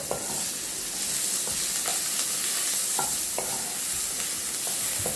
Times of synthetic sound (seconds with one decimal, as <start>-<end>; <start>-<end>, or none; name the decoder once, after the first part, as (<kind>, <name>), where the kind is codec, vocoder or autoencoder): none